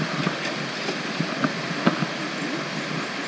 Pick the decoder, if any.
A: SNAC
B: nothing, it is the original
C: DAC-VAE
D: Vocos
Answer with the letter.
B